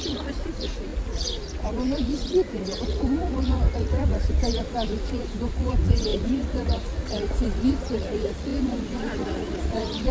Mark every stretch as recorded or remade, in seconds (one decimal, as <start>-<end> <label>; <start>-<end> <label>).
0.0-10.1 remade